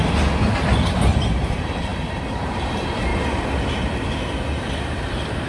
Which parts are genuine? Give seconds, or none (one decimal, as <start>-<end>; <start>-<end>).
0.0-1.4; 3.1-5.1

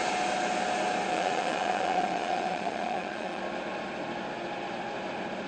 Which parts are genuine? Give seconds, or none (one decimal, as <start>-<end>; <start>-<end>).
0.0-1.1; 3.4-5.5

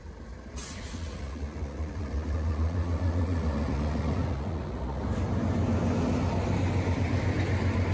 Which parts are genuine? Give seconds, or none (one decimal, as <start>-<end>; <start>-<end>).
0.0-0.6; 5.0-7.9